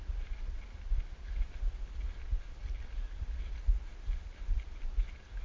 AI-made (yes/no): no